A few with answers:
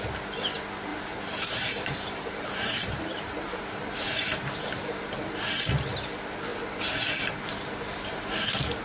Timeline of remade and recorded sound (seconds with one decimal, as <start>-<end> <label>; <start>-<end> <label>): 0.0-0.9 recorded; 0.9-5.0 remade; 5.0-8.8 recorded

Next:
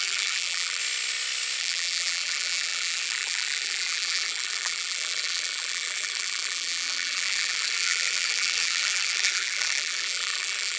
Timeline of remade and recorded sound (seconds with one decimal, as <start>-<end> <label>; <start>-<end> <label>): 0.0-0.8 remade; 0.8-1.6 recorded; 1.6-10.8 remade

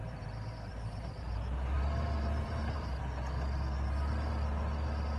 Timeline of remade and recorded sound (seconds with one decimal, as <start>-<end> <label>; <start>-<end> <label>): 0.0-3.0 remade; 3.0-5.2 recorded

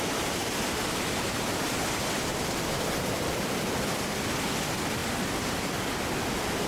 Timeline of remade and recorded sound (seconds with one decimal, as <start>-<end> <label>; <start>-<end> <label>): 0.0-6.7 remade